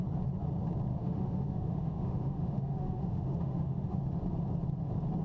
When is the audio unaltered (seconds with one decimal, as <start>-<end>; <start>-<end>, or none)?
0.0-0.9; 4.0-5.2